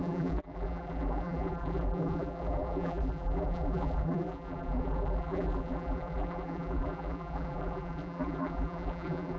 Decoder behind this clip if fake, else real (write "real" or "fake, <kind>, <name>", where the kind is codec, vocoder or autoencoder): fake, vocoder, BigVGAN v2